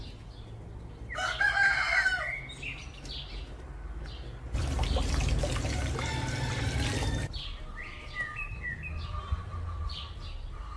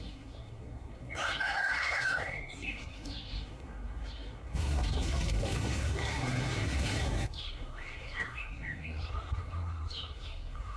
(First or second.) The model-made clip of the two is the second